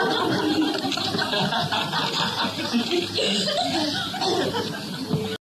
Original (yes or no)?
yes